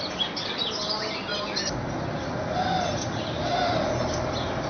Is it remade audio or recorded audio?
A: recorded